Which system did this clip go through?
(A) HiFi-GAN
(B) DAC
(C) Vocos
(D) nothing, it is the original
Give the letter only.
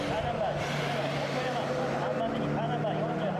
D